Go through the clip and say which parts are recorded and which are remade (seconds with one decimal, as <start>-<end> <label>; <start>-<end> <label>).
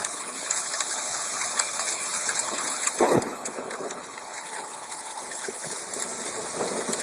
0.0-5.8 remade; 5.8-7.0 recorded